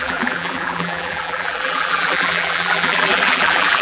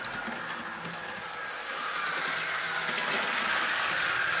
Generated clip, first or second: first